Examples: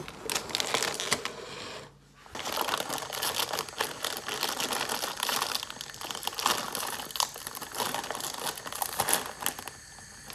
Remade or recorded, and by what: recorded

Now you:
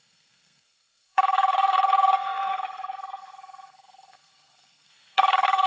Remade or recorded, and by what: remade, codec, SNAC